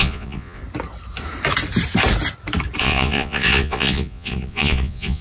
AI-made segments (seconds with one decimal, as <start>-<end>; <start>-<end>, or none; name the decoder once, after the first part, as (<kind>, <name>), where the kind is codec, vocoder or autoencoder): 0.0-0.6 (vocoder, Vocos); 2.8-5.2